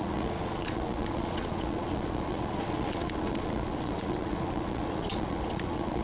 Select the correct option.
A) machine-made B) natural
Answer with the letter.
A